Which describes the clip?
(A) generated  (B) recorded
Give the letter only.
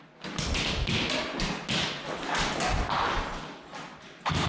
B